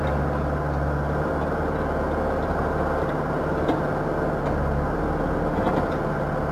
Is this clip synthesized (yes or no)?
no